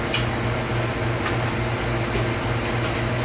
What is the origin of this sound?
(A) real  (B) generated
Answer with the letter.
A